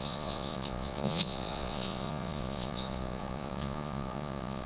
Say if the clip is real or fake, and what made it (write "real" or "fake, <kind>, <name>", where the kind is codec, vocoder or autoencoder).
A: fake, vocoder, Vocos